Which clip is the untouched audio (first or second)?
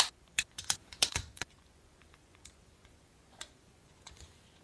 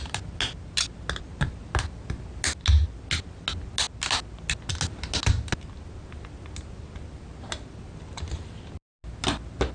second